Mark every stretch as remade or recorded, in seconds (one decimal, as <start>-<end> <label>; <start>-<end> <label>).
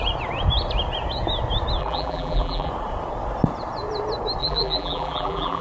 0.0-1.8 recorded; 1.8-2.7 remade; 2.7-4.4 recorded; 4.4-5.6 remade